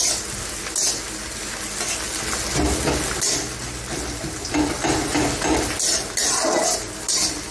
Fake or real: real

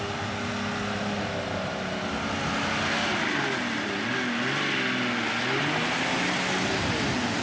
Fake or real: real